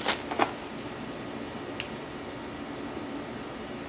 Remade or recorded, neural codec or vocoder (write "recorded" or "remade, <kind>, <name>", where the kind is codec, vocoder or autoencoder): recorded